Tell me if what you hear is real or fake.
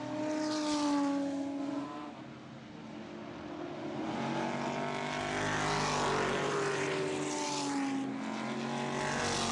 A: real